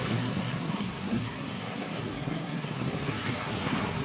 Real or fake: fake